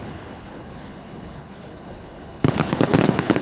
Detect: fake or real fake